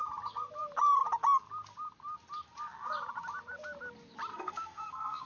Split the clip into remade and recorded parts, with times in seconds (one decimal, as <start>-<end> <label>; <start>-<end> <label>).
0.0-4.3 recorded; 4.3-5.3 remade

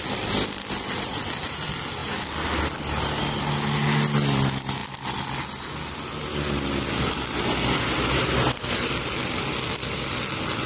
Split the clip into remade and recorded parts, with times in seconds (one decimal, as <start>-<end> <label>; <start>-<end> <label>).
0.0-10.7 recorded